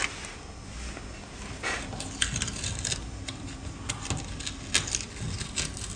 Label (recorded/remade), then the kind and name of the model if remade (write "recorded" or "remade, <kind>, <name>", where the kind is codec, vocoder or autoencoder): recorded